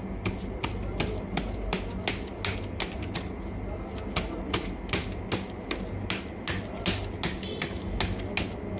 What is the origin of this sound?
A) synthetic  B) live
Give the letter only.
B